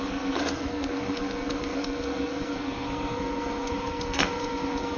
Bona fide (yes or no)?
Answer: no